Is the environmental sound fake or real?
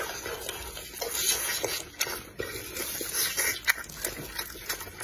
real